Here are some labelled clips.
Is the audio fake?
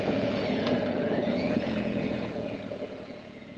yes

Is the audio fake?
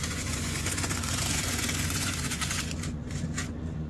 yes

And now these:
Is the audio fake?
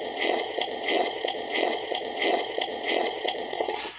yes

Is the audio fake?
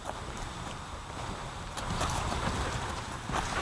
no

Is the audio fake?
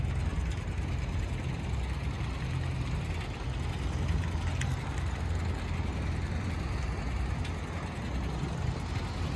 no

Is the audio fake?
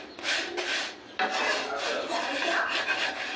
no